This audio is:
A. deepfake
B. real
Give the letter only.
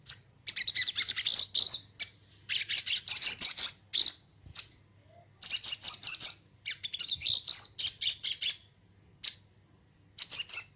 B